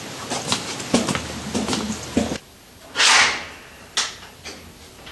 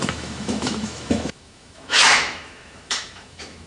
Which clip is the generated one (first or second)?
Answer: second